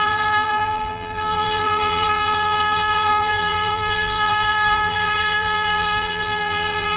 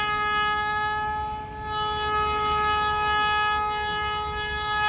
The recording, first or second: second